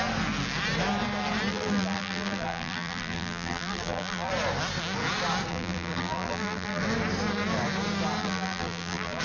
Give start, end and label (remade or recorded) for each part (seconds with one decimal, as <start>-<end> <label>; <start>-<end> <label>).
0.0-1.5 recorded; 1.5-4.3 remade; 4.3-5.5 recorded; 5.5-6.8 remade; 6.8-8.2 recorded; 8.2-9.2 remade